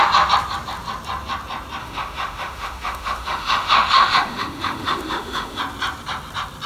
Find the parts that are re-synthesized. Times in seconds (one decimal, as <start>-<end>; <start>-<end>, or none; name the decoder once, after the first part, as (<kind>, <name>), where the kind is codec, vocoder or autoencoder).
1.8-5.6 (autoencoder, DAC-VAE)